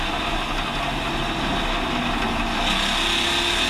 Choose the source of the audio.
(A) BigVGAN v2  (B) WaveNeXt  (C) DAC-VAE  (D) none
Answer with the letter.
D